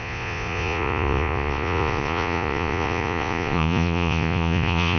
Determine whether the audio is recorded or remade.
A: remade